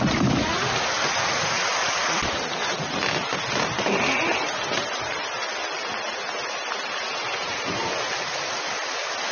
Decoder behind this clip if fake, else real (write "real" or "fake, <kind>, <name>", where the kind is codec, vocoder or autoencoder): real